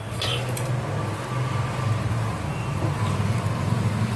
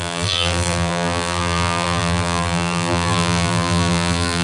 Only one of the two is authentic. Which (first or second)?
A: first